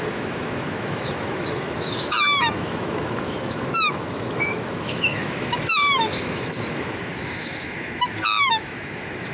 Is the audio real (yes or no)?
no